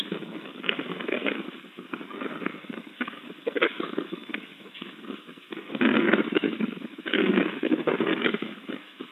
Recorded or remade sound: remade